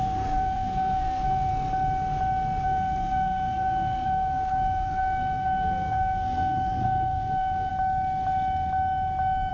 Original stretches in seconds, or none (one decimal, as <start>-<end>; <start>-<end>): 1.5-2.6; 7.7-9.5